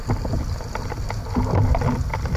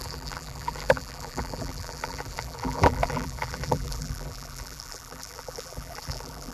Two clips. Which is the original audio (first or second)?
first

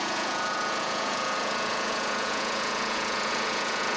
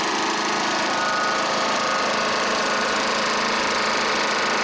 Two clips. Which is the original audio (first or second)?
second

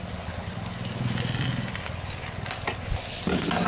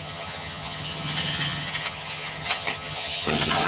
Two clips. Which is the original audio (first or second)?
first